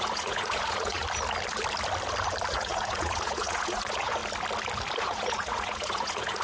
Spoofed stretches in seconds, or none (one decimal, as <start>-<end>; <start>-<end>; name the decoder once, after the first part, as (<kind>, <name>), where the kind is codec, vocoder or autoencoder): 0.0-1.0 (vocoder, Vocos); 2.5-4.2; 5.0-6.4